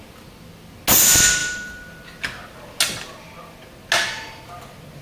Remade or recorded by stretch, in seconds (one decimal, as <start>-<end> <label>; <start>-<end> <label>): 0.0-5.0 recorded